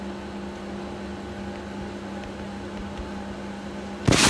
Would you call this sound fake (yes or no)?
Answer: no